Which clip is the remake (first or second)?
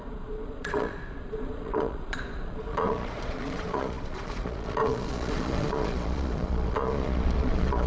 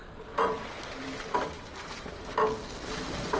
first